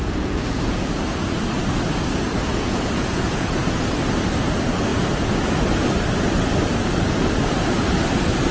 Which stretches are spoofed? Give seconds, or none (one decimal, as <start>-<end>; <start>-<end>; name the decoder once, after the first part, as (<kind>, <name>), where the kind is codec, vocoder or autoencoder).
0.0-0.9 (vocoder, Vocos); 2.5-3.8